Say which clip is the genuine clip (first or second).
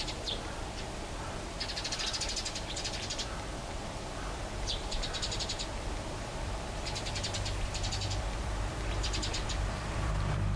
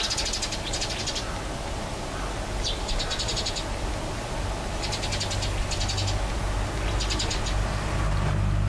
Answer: second